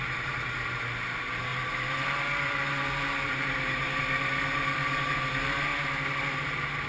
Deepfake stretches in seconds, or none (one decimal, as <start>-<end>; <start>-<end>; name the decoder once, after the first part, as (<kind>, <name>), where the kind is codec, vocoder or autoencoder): 0.0-6.9 (vocoder, BigVGAN v2)